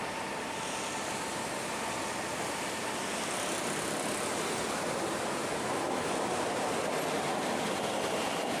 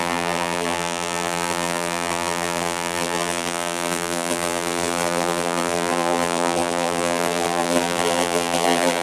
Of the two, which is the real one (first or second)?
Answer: first